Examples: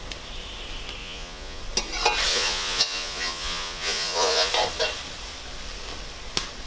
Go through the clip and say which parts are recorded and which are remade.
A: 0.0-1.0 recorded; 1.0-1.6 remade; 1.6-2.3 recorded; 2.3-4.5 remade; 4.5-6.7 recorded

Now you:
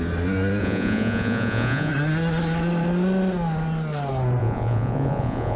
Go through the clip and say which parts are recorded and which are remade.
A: 0.0-0.6 recorded; 0.6-1.9 remade; 1.9-4.4 recorded; 4.4-5.6 remade

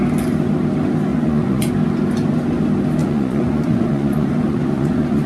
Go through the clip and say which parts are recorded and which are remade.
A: 0.0-1.1 recorded; 1.1-1.7 remade; 1.7-3.0 recorded; 3.0-5.3 remade

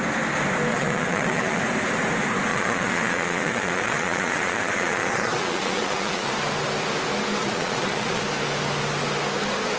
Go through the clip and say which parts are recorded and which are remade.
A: 0.0-0.7 recorded; 0.7-1.6 remade; 1.6-2.5 recorded; 2.5-6.3 remade; 6.3-7.4 recorded; 7.4-8.2 remade; 8.2-9.8 recorded

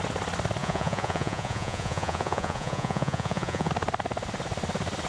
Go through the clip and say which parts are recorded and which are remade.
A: 0.0-0.6 recorded; 0.6-3.7 remade; 3.7-5.1 recorded

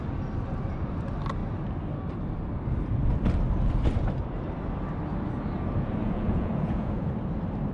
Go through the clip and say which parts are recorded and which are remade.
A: 0.0-6.0 recorded; 6.0-7.1 remade; 7.1-7.7 recorded